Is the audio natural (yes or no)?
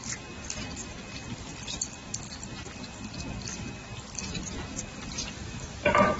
yes